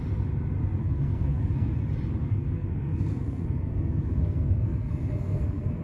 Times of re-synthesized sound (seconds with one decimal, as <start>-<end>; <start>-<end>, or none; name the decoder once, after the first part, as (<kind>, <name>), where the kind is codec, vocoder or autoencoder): 0.8-1.7 (codec, SNAC); 2.2-5.8